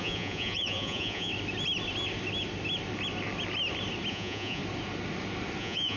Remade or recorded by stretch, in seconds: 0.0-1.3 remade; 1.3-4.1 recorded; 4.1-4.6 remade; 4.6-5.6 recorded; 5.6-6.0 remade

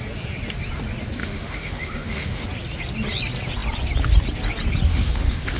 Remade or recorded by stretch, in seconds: 0.0-1.2 recorded; 1.2-2.4 remade; 2.4-4.9 recorded; 4.9-5.6 remade

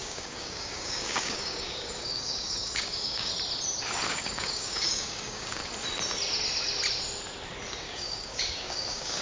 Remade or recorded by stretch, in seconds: 0.0-3.3 remade; 3.3-4.1 recorded; 4.1-5.6 remade; 5.6-7.8 recorded; 7.8-9.2 remade

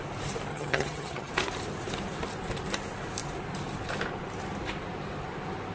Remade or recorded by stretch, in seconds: 0.0-0.5 recorded; 0.5-1.3 remade; 1.3-5.7 recorded

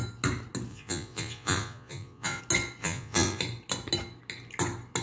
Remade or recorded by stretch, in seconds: 0.0-0.7 recorded; 0.7-2.4 remade; 2.4-2.8 recorded; 2.8-3.4 remade; 3.4-5.0 recorded

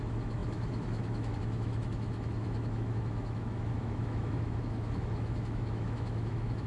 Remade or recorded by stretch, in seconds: 0.0-6.7 remade